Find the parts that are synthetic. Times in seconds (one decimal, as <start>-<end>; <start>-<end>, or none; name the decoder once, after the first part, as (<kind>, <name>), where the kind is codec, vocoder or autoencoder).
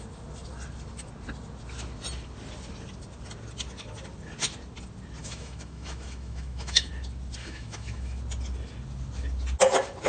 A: 5.2-6.9 (autoencoder, DAC-VAE); 7.4-8.2